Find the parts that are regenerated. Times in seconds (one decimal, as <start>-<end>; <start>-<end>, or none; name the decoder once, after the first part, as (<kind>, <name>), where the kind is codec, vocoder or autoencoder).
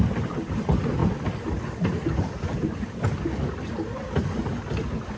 none